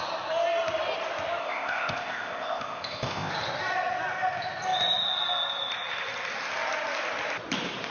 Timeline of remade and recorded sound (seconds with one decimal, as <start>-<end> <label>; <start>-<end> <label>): 0.0-1.4 recorded; 1.4-3.3 remade; 3.3-7.9 recorded